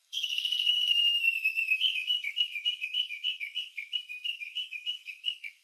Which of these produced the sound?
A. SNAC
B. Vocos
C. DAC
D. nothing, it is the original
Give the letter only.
A